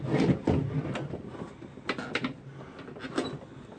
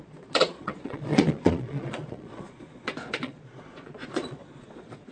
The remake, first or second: second